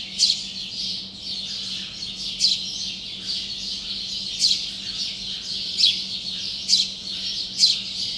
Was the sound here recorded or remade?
recorded